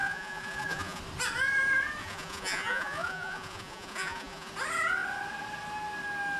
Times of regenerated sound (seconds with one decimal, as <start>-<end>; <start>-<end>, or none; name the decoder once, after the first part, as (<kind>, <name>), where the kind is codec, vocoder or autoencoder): 0.0-1.0 (vocoder, Vocos); 2.0-4.5